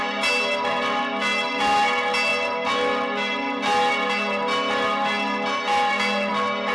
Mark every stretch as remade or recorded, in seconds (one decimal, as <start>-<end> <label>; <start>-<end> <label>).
0.0-6.7 recorded